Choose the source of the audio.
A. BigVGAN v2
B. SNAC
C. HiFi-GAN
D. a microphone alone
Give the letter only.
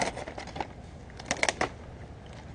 D